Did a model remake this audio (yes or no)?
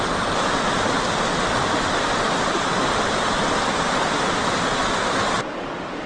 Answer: no